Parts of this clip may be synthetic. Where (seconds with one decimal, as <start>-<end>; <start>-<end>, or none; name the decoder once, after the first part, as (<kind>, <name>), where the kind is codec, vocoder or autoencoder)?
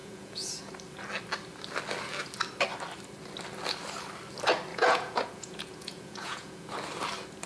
0.0-0.7 (vocoder, Vocos); 4.7-6.7